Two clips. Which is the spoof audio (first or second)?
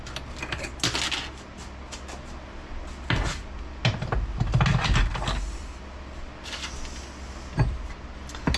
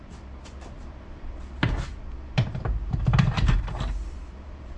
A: second